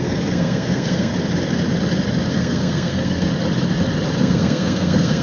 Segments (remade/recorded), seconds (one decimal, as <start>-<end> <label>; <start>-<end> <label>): 0.0-1.1 remade; 1.1-2.3 recorded; 2.3-3.3 remade; 3.3-4.2 recorded; 4.2-5.2 remade